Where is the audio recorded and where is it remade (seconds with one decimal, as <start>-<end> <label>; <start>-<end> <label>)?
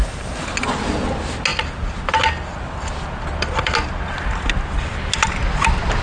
0.0-6.0 recorded